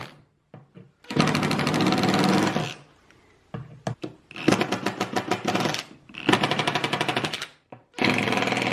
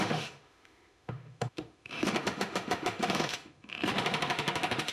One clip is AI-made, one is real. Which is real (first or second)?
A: first